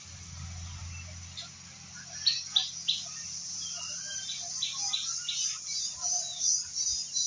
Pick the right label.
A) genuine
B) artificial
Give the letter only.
A